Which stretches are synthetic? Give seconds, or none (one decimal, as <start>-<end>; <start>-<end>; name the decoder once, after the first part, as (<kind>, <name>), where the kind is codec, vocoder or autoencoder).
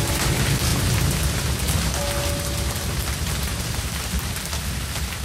none